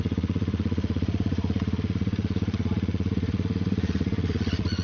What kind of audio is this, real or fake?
fake